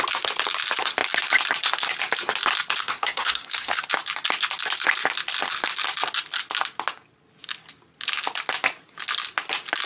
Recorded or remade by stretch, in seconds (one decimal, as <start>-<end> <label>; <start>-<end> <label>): 0.0-2.8 recorded; 2.8-3.8 remade; 3.8-9.9 recorded